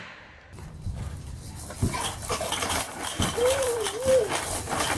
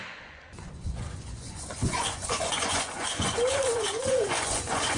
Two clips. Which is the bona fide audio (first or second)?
first